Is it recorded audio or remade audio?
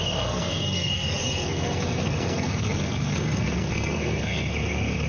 remade